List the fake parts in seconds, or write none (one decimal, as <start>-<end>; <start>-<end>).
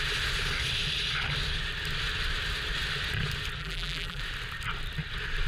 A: 3.6-4.2